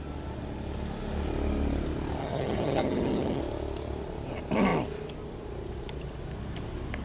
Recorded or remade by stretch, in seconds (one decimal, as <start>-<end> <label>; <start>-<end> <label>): 0.0-2.2 recorded; 2.2-3.4 remade; 3.4-7.0 recorded